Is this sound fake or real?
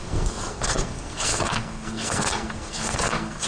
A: fake